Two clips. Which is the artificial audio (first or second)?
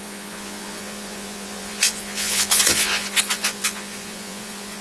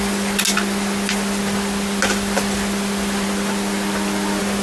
first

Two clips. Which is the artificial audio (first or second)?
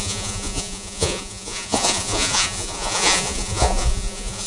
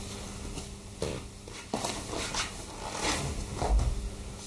first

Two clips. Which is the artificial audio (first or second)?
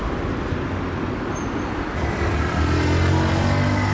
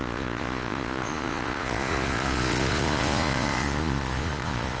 second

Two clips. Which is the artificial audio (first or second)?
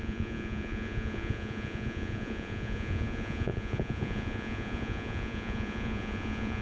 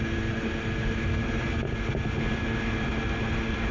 first